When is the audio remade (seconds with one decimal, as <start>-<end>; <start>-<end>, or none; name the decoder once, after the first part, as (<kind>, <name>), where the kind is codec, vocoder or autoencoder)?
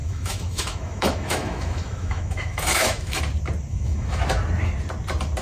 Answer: 0.0-3.2 (autoencoder, DAC-VAE); 3.7-4.2